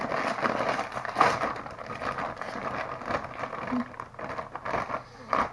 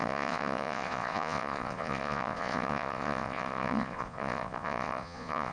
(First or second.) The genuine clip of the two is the first